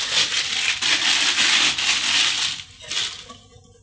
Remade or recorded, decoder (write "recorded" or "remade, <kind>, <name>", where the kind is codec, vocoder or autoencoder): recorded